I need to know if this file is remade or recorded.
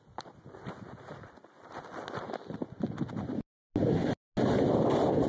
recorded